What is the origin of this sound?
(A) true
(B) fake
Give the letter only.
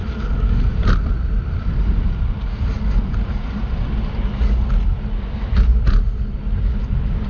A